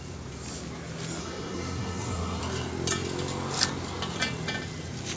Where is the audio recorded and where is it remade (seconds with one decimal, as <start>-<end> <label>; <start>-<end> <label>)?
0.0-1.2 recorded; 1.2-2.4 remade; 2.4-5.2 recorded

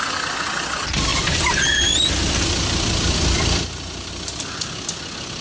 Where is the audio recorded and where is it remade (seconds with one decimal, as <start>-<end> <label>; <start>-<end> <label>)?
0.0-5.4 recorded

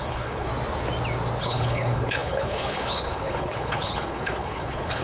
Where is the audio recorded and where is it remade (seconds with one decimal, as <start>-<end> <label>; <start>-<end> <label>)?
0.0-0.5 remade; 0.5-1.4 recorded; 1.4-5.0 remade

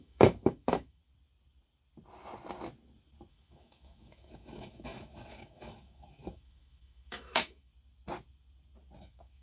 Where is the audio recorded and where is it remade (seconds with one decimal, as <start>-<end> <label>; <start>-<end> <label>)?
0.0-1.0 remade; 1.0-3.3 recorded; 3.3-7.7 remade; 7.7-9.0 recorded; 9.0-9.4 remade

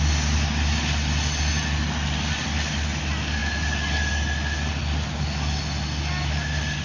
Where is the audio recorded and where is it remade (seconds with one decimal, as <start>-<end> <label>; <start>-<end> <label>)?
0.0-6.8 recorded